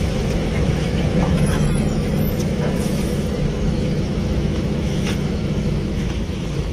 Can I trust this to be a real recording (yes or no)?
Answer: no